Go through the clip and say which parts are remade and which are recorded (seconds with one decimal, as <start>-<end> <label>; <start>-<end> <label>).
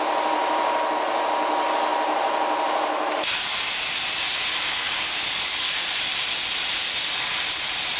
0.0-8.0 recorded